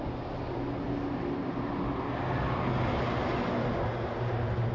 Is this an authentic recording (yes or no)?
yes